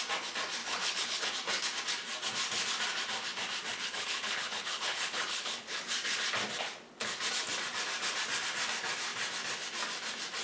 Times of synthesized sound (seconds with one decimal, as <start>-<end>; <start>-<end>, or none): 0.6-1.3; 3.7-5.8